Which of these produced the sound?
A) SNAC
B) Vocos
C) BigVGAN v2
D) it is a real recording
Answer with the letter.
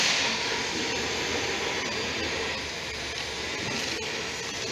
D